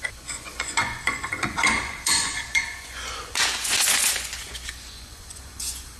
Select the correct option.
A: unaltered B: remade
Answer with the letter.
B